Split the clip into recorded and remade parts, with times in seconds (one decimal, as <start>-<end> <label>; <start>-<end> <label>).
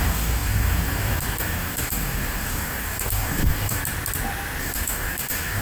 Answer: 0.0-3.8 remade; 3.8-4.6 recorded; 4.6-5.6 remade